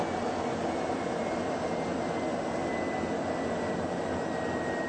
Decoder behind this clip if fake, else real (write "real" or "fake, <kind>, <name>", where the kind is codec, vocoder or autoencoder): real